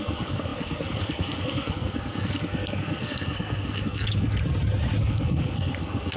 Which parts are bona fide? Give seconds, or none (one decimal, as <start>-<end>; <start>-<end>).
4.4-5.0